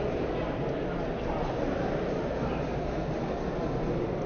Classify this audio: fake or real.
real